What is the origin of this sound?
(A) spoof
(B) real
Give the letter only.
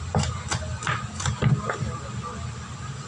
B